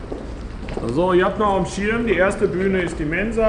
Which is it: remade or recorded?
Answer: recorded